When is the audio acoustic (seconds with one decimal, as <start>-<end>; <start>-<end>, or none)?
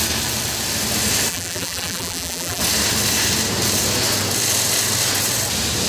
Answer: 0.0-1.3; 2.6-5.9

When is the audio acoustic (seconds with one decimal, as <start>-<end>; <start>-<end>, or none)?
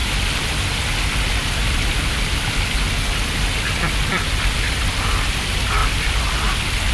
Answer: 0.0-4.1; 5.8-6.9